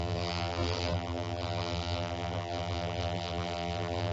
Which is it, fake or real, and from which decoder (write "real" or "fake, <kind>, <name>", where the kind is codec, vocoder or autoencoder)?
fake, vocoder, BigVGAN v2